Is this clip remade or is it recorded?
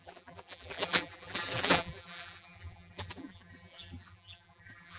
remade